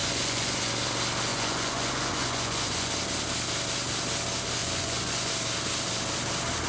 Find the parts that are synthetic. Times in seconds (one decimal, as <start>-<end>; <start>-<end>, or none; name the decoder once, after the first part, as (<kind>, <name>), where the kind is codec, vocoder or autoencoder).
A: 0.0-0.7 (vocoder, Vocos); 1.3-2.9; 4.6-5.3